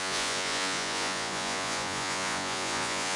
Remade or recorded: remade